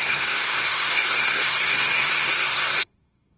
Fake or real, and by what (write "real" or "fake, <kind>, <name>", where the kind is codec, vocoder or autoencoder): fake, codec, SNAC